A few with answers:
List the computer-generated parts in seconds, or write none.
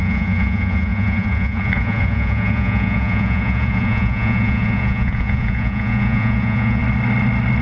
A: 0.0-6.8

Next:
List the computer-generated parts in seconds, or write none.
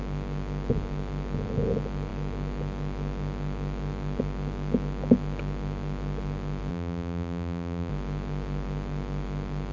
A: 6.7-7.9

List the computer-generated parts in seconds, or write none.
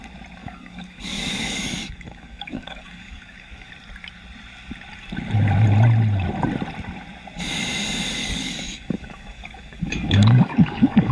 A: 0.4-3.7; 8.2-11.1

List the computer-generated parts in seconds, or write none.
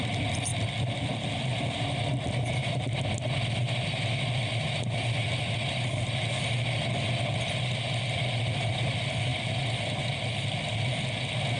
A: none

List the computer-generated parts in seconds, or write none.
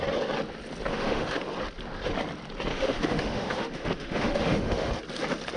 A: 0.9-1.4; 2.7-4.9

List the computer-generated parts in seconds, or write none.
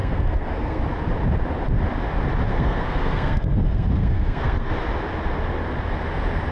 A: 0.0-0.8; 2.5-4.7